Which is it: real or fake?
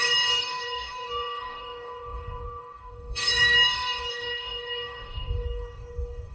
fake